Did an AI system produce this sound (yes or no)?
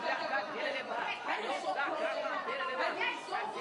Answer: yes